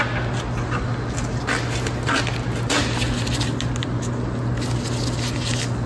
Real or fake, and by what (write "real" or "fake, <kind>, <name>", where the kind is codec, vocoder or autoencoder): real